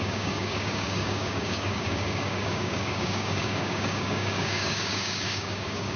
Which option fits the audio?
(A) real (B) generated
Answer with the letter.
B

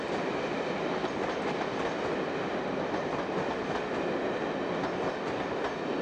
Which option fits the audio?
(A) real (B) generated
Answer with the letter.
A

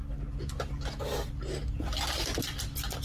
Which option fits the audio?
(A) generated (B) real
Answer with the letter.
B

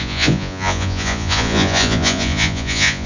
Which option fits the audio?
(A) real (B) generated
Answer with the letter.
B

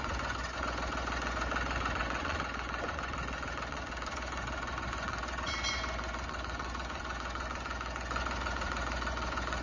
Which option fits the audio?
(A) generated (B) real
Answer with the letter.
A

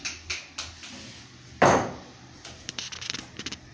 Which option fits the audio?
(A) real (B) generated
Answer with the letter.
A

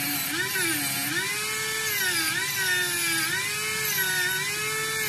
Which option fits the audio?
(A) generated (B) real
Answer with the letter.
B